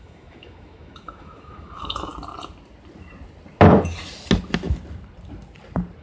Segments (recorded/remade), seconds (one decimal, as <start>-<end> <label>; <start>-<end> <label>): 0.0-2.1 remade; 2.1-6.0 recorded